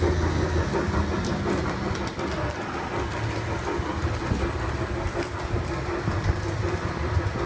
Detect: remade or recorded recorded